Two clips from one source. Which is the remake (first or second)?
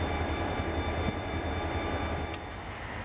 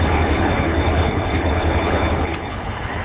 second